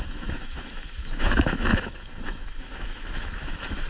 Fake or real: fake